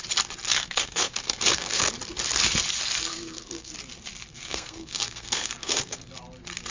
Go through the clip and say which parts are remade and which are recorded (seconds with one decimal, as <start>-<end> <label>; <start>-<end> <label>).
0.0-0.5 recorded; 0.5-1.9 remade; 1.9-3.1 recorded; 3.1-3.7 remade; 3.7-4.3 recorded; 4.3-6.1 remade; 6.1-6.7 recorded